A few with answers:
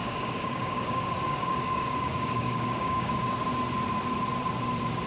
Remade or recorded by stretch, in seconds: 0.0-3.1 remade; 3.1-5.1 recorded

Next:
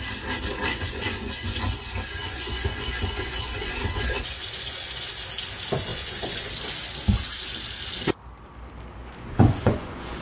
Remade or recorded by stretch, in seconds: 0.0-0.7 recorded; 0.7-5.1 remade; 5.1-5.9 recorded; 5.9-6.5 remade; 6.5-9.0 recorded; 9.0-10.2 remade

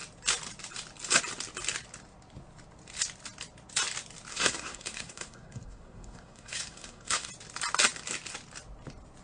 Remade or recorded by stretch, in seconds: 0.0-4.3 recorded; 4.3-7.3 remade; 7.3-9.2 recorded

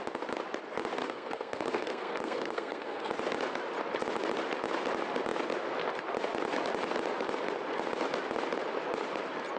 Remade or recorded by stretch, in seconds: 0.0-1.0 recorded; 1.0-3.1 remade; 3.1-9.6 recorded

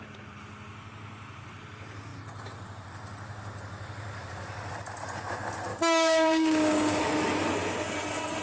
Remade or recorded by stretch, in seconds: 0.0-5.7 recorded; 5.7-7.0 remade; 7.0-8.4 recorded

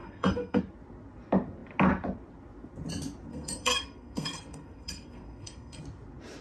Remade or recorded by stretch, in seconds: 0.0-0.6 remade; 0.6-3.3 recorded; 3.3-5.8 remade; 5.8-6.4 recorded

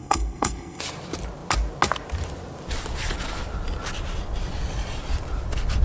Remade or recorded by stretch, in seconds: 0.0-0.8 remade; 0.8-5.8 recorded

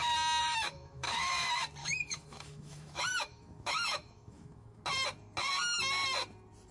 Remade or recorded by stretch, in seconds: 0.0-0.4 recorded; 0.4-1.3 remade; 1.3-1.8 recorded; 1.8-4.8 remade; 4.8-6.7 recorded